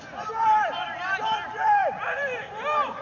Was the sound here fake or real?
fake